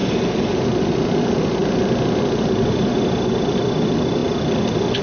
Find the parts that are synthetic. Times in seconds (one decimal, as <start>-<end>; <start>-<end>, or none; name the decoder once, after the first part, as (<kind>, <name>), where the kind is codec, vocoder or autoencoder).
none